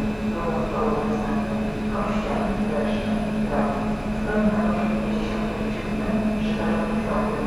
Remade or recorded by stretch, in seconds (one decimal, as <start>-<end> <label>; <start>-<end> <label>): 0.0-0.6 recorded; 0.6-4.7 remade; 4.7-7.5 recorded